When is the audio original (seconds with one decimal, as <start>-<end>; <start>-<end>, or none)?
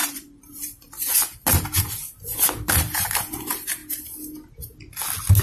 1.2-2.2; 3.8-5.4